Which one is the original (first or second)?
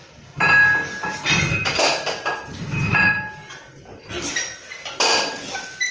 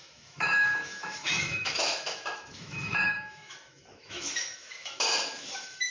first